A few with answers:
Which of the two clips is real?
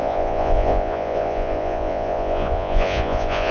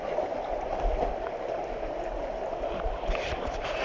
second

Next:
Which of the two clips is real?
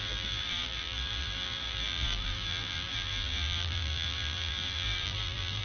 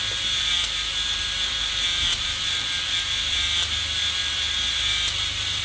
second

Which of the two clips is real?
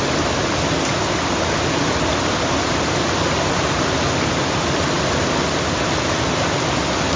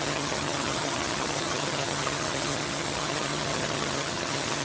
first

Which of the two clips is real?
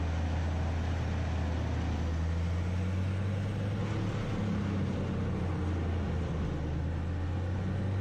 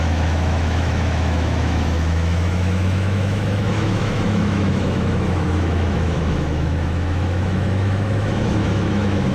first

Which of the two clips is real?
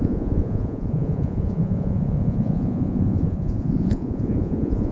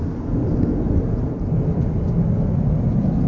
second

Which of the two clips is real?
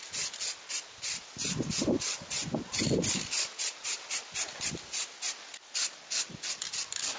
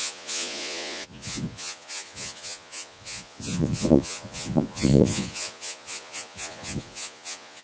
first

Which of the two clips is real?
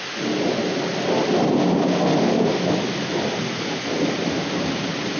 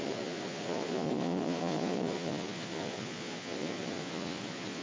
first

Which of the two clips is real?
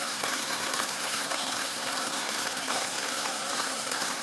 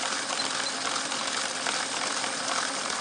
second